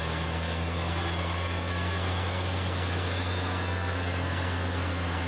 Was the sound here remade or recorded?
remade